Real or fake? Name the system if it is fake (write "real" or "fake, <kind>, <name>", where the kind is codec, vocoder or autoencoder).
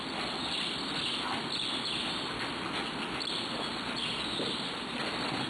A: real